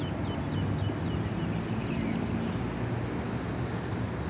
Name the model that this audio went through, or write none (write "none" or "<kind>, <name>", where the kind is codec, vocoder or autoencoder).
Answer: none